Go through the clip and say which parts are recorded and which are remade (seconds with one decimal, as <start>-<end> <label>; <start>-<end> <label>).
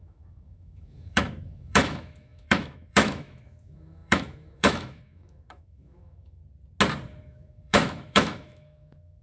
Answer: 0.0-6.4 remade; 6.4-7.2 recorded; 7.2-9.2 remade